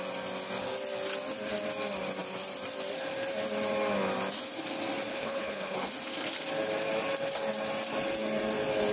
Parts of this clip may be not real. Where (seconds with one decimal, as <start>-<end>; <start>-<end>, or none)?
5.1-5.9